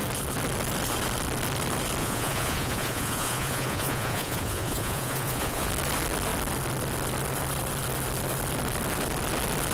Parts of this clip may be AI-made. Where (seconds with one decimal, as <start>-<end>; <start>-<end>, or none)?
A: 2.0-5.7